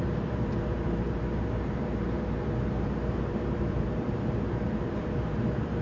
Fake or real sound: fake